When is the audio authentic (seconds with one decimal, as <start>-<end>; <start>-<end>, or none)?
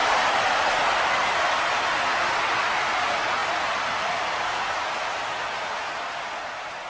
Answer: 0.6-6.9